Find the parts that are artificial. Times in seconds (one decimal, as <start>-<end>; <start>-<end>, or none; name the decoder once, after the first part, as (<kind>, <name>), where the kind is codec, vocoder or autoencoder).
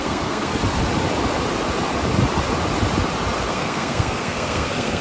0.0-0.5 (codec, SNAC); 3.5-5.0